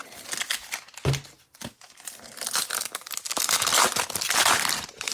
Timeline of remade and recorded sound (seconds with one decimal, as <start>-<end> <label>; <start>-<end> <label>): 0.0-5.1 recorded